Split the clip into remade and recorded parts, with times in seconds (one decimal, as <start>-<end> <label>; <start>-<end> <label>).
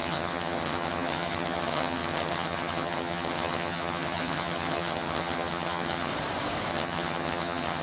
0.0-6.1 remade; 6.1-6.7 recorded; 6.7-7.8 remade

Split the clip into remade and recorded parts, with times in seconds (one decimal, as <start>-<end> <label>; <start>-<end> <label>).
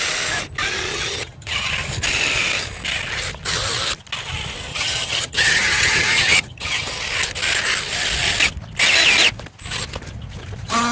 0.0-0.9 recorded; 0.9-1.7 remade; 1.7-4.7 recorded; 4.7-6.9 remade; 6.9-10.9 recorded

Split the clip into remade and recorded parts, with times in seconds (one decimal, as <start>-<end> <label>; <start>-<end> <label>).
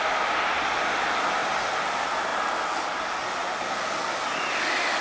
0.0-5.0 recorded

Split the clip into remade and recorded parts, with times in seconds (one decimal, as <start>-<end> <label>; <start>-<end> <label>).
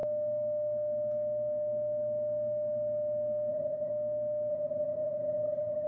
0.0-3.5 recorded; 3.5-3.9 remade; 3.9-4.5 recorded; 4.5-5.9 remade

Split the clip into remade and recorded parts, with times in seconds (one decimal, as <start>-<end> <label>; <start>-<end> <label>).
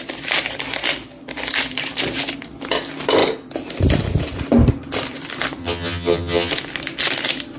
0.0-5.6 recorded; 5.6-6.5 remade; 6.5-7.6 recorded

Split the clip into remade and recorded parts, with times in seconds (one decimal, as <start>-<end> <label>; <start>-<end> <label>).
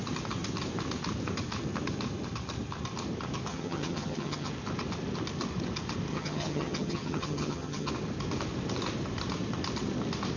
0.0-3.5 recorded; 3.5-4.5 remade; 4.5-6.1 recorded; 6.1-7.9 remade; 7.9-10.4 recorded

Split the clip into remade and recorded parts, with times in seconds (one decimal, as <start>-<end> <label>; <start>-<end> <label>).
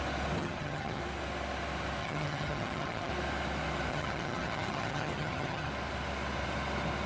0.0-0.4 recorded; 0.4-1.0 remade; 1.0-2.0 recorded; 2.0-3.1 remade; 3.1-3.9 recorded; 3.9-5.7 remade; 5.7-7.1 recorded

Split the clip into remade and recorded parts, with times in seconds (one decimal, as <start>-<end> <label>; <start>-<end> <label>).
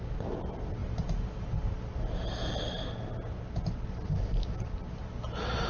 0.0-5.7 recorded